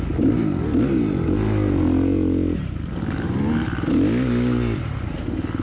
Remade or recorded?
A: recorded